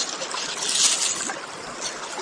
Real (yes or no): yes